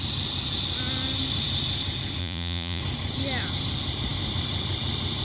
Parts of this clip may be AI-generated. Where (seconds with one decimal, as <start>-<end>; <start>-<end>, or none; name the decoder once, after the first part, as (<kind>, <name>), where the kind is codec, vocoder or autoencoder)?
2.2-2.8 (vocoder, Vocos)

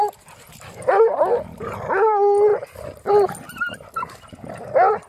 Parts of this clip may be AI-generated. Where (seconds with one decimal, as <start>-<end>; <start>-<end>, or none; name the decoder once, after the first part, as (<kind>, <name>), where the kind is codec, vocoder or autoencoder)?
2.5-3.1 (vocoder, BigVGAN v2)